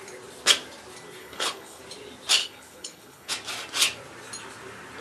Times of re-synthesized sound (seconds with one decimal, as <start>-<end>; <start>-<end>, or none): 1.2-1.8; 2.4-3.3